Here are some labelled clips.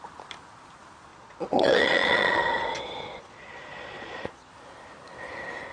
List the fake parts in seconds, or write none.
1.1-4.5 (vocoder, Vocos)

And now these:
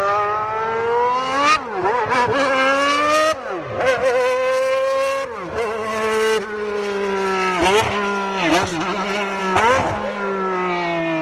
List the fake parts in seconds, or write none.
none